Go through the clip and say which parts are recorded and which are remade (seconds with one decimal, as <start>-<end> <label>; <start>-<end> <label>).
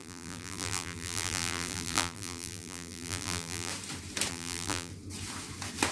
0.0-3.7 remade; 3.7-4.3 recorded; 4.3-4.9 remade; 4.9-5.9 recorded